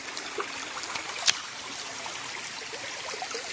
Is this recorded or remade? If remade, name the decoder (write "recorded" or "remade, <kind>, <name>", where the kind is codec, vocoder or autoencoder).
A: remade, vocoder, BigVGAN v2